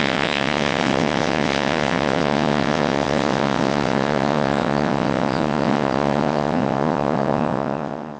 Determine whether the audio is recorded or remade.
remade